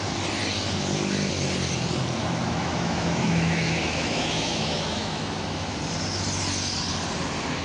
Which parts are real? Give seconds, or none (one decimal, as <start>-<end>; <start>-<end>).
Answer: 0.0-2.2; 5.8-7.6